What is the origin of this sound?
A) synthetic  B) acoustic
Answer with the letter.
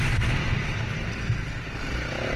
B